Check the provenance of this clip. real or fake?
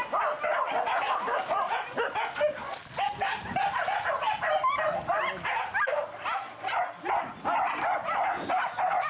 real